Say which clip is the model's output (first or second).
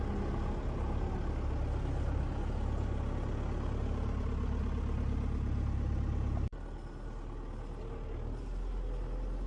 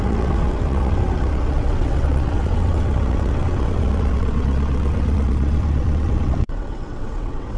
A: second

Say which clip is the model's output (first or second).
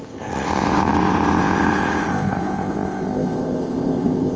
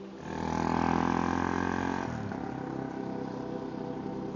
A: first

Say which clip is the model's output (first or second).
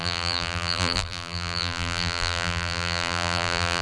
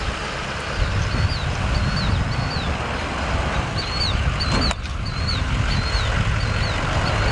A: first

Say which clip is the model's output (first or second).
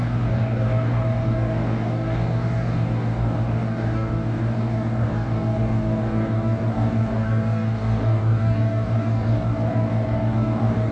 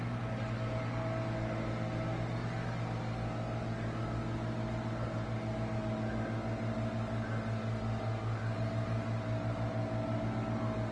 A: first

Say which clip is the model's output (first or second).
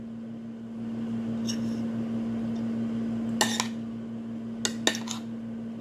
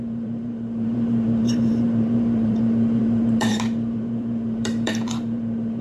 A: second